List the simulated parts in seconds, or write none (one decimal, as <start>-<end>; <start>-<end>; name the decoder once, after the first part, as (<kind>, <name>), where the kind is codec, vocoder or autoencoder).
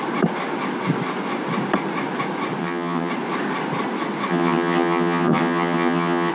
2.6-3.1 (vocoder, HiFi-GAN); 4.3-6.3